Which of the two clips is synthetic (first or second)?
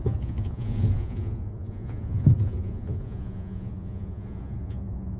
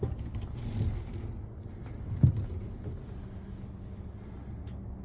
first